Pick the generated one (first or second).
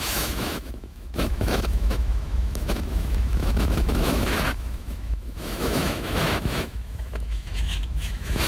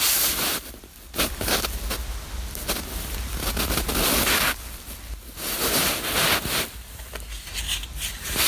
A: first